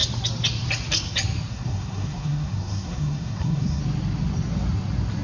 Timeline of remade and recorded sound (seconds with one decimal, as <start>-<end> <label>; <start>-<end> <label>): 0.0-1.5 recorded; 1.5-3.8 remade; 3.8-5.2 recorded